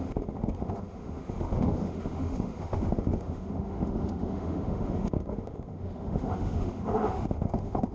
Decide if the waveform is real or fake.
fake